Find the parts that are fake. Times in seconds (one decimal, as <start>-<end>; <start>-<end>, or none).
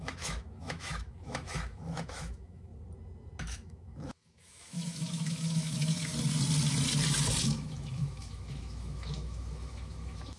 0.0-2.7; 3.4-6.1; 7.4-10.4